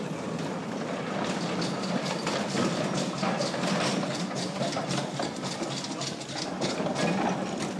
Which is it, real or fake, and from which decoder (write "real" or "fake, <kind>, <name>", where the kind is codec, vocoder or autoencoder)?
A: real